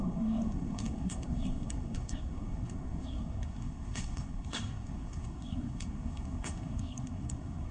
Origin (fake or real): fake